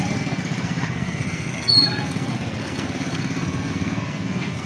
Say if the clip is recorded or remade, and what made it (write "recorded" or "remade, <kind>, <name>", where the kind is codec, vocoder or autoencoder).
remade, codec, SNAC